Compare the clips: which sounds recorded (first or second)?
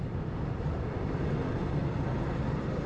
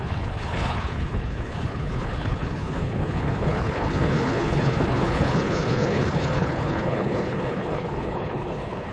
first